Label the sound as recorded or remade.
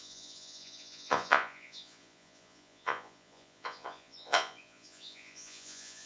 remade